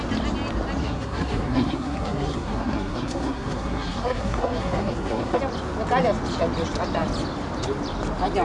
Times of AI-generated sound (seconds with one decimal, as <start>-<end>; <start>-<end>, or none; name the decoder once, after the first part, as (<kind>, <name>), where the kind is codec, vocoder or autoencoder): 0.8-5.4 (codec, SNAC)

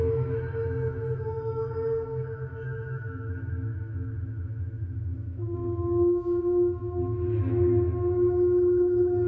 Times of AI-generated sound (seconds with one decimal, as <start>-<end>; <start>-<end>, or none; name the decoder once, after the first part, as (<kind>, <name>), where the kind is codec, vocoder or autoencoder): 0.0-9.3 (autoencoder, DAC-VAE)

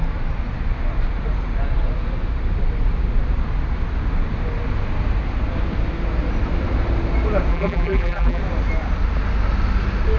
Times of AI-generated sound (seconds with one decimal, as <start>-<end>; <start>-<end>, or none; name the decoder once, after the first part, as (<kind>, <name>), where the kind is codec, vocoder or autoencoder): 7.5-8.4 (vocoder, BigVGAN v2)

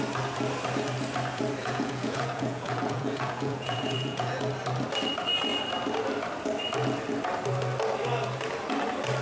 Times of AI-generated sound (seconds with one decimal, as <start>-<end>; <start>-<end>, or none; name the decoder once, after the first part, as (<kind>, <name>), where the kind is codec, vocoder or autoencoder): 1.6-4.4 (vocoder, Vocos)

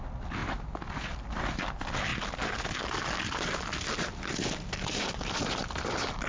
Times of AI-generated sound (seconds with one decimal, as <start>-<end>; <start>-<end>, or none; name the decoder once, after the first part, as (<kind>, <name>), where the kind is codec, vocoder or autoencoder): none

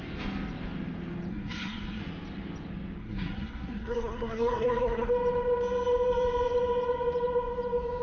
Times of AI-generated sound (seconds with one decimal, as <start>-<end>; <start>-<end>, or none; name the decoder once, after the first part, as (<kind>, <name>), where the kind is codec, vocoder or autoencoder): 1.3-2.0 (codec, SNAC); 3.0-5.1

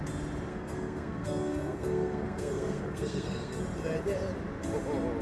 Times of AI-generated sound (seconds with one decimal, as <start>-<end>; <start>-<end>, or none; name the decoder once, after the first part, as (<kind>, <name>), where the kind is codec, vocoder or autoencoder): 0.5-3.6 (codec, SNAC)

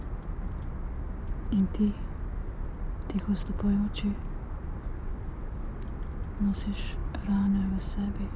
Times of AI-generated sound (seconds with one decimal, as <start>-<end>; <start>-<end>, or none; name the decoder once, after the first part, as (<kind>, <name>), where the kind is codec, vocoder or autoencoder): 5.1-5.6 (vocoder, BigVGAN v2); 7.0-7.7